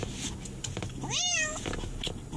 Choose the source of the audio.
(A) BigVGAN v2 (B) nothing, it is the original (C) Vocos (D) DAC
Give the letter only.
A